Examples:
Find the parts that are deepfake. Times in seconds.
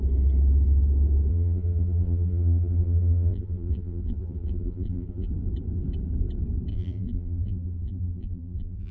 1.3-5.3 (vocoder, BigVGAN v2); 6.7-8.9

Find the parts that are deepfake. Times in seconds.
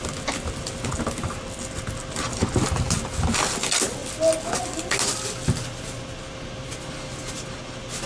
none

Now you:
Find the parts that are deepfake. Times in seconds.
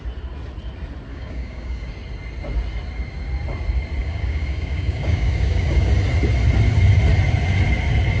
1.1-1.9 (codec, DAC); 4.0-5.9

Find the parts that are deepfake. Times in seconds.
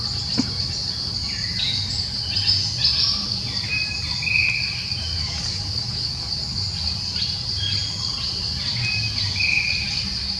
5.1-6.3 (codec, DAC)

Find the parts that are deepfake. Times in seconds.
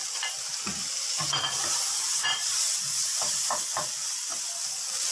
0.0-2.6 (vocoder, BigVGAN v2); 3.0-3.5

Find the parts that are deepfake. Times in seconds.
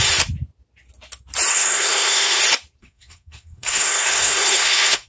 1.5-2.4 (codec, SNAC); 2.8-5.1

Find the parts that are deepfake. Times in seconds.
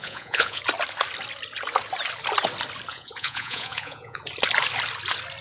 0.0-0.6 (vocoder, Vocos); 2.9-4.2